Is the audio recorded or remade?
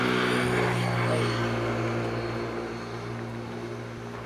recorded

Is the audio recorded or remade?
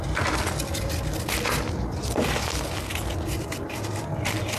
recorded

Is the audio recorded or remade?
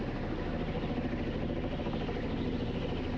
recorded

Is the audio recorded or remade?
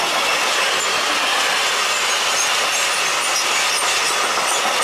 recorded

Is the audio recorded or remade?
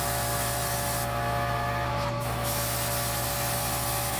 recorded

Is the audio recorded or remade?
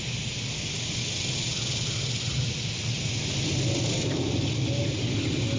recorded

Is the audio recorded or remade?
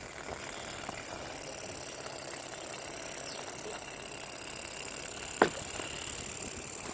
recorded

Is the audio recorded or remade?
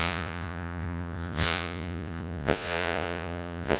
remade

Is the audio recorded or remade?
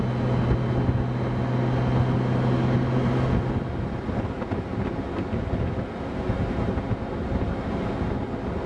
recorded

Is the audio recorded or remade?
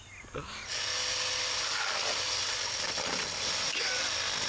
recorded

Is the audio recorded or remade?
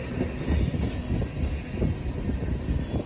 recorded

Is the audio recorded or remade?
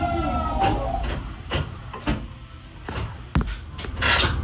recorded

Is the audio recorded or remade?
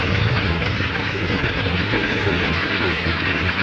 remade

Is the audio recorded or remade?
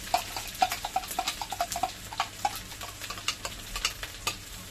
recorded